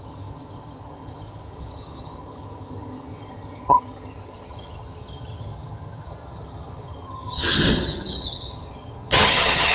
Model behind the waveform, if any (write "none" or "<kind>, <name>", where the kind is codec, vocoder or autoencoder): vocoder, HiFi-GAN